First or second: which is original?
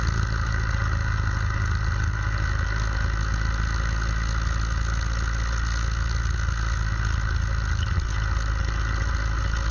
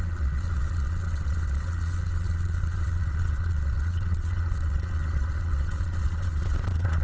first